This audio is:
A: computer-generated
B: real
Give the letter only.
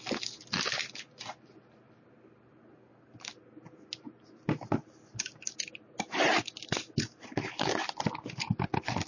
B